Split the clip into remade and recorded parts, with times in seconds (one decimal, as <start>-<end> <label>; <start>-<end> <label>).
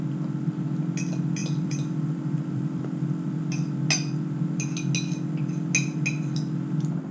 0.0-1.4 recorded; 1.4-3.4 remade; 3.4-7.1 recorded